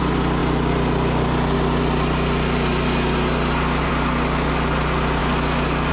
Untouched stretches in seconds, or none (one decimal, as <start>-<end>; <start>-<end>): 0.0-5.9